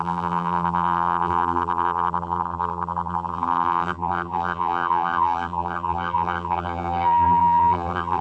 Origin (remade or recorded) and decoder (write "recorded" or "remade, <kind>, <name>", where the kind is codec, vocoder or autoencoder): remade, vocoder, BigVGAN v2